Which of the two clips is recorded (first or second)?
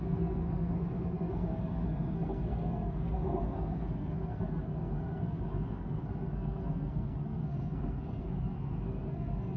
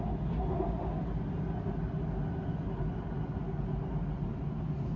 second